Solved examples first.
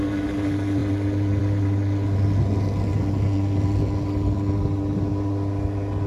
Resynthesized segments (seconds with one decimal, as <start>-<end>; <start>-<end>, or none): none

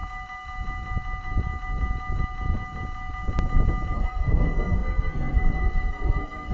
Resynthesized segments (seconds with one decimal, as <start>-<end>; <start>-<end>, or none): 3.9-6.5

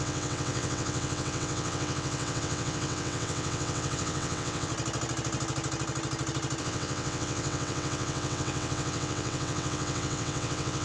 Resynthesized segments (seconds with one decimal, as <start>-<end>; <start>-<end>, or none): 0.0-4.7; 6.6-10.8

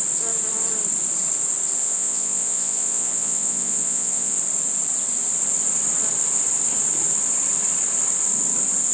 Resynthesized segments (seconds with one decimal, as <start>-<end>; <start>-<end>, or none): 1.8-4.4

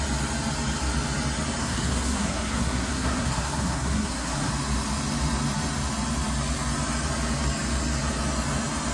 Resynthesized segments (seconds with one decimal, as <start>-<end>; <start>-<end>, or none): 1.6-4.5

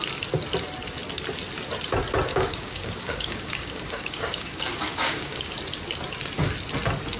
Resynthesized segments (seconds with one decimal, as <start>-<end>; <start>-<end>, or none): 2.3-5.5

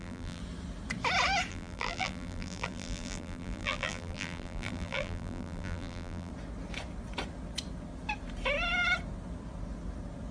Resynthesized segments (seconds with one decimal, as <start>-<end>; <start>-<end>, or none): 0.0-0.4; 1.5-6.3

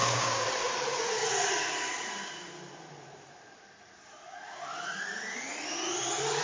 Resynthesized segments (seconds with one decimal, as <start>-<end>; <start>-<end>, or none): 0.0-0.5